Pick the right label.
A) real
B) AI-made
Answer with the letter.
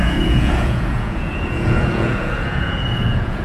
B